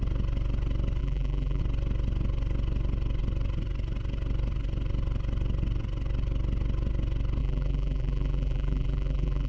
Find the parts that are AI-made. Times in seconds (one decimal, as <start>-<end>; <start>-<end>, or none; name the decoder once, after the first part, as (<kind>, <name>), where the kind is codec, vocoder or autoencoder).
1.0-1.6 (vocoder, BigVGAN v2); 7.4-9.5